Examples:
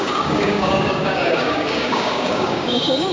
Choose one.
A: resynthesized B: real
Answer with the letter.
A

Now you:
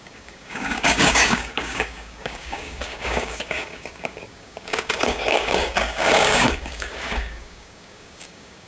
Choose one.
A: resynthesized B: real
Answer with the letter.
A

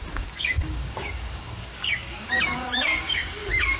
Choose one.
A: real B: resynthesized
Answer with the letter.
B